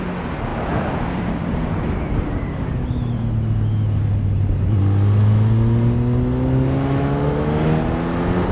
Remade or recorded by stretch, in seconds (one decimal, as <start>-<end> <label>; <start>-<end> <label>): 0.0-8.5 recorded